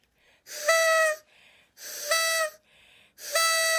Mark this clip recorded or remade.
recorded